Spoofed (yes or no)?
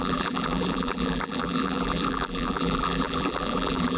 yes